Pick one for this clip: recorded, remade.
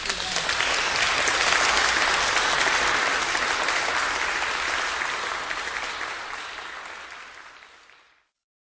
recorded